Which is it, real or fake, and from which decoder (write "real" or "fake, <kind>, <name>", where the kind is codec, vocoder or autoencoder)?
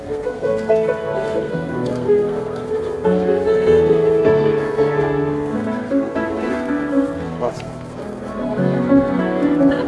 fake, codec, SNAC